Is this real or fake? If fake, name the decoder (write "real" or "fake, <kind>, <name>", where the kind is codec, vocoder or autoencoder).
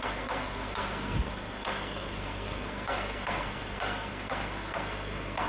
fake, codec, SNAC